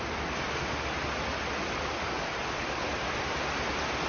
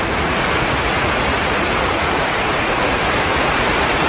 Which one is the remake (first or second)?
second